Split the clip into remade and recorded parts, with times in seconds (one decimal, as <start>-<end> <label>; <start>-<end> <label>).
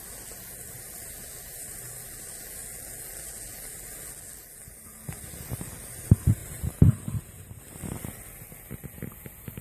0.0-6.4 recorded; 6.4-7.6 remade; 7.6-9.6 recorded